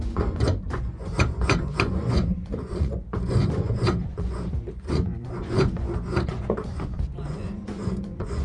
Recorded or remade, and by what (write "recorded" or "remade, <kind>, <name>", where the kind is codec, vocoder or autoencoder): remade, vocoder, Vocos